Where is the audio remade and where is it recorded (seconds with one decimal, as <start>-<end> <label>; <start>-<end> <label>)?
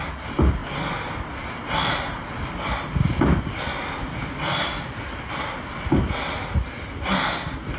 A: 0.0-7.8 recorded